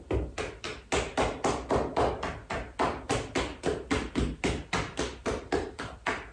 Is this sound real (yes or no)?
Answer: yes